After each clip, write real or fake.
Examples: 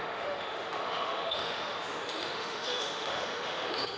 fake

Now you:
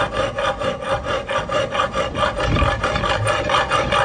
real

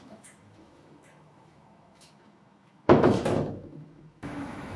fake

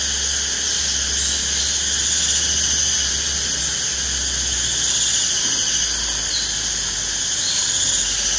real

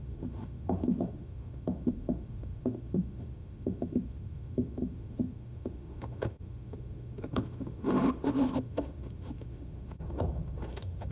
fake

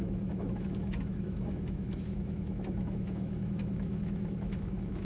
fake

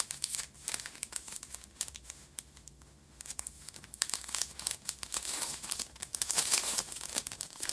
fake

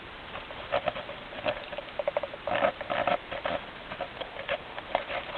real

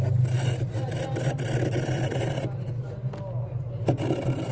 real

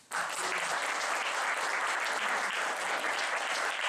real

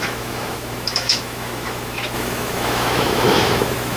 fake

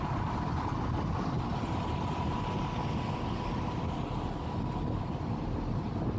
real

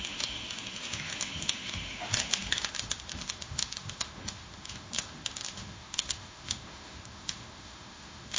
fake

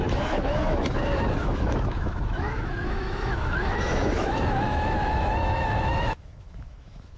fake